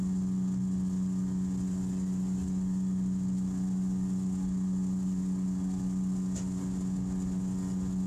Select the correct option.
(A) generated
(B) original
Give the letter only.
B